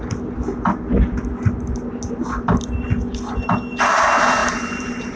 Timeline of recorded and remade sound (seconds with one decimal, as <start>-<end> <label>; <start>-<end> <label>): 0.0-4.4 recorded; 4.4-5.2 remade